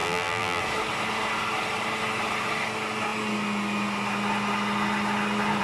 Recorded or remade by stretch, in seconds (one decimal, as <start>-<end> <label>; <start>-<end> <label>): 0.0-0.6 remade; 0.6-5.6 recorded